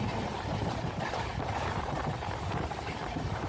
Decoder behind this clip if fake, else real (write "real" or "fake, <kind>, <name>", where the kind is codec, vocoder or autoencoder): fake, vocoder, BigVGAN v2